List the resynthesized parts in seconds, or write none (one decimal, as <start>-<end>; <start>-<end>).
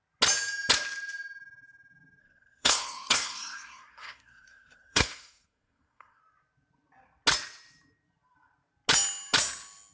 2.2-6.2